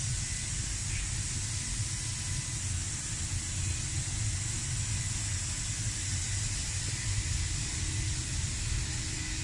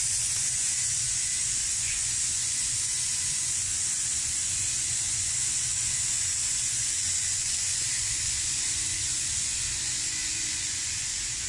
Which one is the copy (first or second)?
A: second